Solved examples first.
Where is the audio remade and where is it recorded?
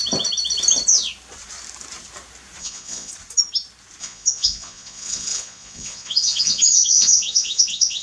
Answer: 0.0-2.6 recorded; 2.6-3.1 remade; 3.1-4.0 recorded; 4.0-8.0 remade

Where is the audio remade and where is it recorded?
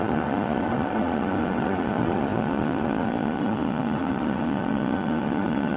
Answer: 0.0-5.8 remade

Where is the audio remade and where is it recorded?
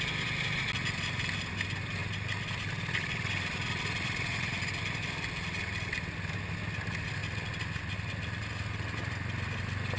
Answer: 0.0-10.0 recorded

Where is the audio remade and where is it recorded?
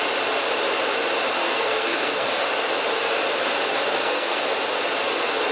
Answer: 0.0-1.4 recorded; 1.4-2.3 remade; 2.3-3.7 recorded; 3.7-4.4 remade; 4.4-5.5 recorded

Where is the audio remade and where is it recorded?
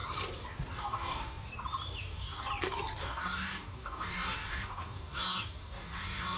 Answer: 0.0-0.7 recorded; 0.7-1.5 remade; 1.5-2.0 recorded; 2.0-2.5 remade; 2.5-3.0 recorded; 3.0-6.4 remade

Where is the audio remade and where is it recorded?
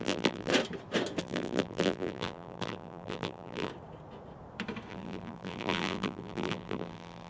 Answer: 0.0-0.5 remade; 0.5-1.2 recorded; 1.2-3.7 remade; 3.7-4.9 recorded; 4.9-7.3 remade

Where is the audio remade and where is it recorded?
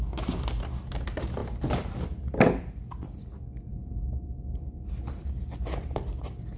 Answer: 0.0-6.6 recorded